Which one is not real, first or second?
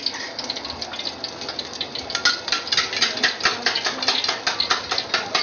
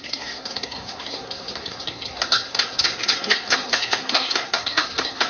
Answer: second